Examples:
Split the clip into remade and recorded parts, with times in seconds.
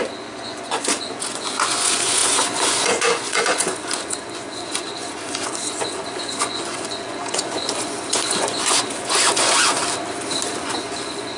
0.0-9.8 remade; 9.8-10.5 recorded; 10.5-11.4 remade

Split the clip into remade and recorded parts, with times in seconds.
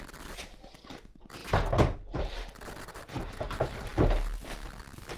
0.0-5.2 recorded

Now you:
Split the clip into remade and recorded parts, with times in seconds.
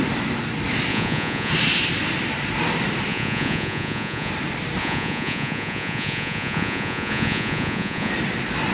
0.0-0.9 recorded; 0.9-1.5 remade; 1.5-3.1 recorded; 3.1-4.3 remade; 4.3-4.8 recorded; 4.8-8.1 remade; 8.1-8.7 recorded